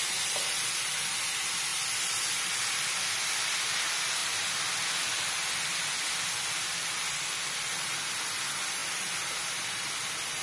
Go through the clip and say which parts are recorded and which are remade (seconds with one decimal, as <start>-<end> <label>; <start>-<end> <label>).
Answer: 0.0-1.7 recorded; 1.7-2.3 remade; 2.3-10.4 recorded